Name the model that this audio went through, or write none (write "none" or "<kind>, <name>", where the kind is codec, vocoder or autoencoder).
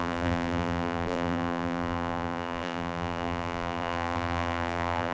vocoder, BigVGAN v2